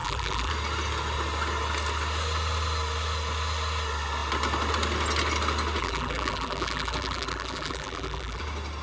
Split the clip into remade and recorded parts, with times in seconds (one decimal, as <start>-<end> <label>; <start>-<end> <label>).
0.0-0.5 remade; 0.5-5.8 recorded; 5.8-8.4 remade; 8.4-8.8 recorded